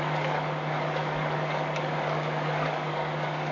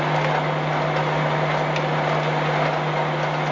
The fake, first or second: first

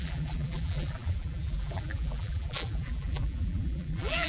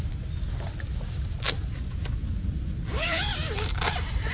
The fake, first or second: first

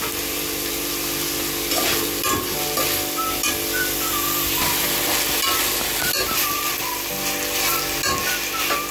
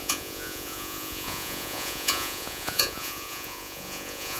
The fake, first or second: second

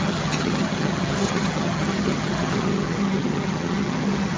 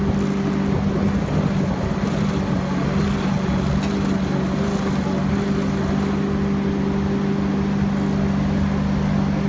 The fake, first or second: first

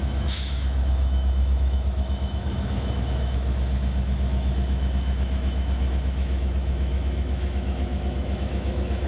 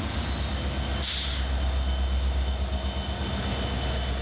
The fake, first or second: first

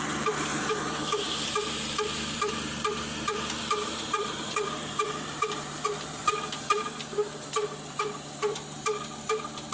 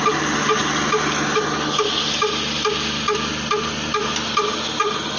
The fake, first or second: first